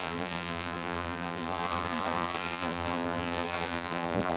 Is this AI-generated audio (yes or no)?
yes